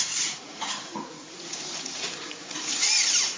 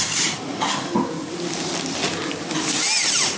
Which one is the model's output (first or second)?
first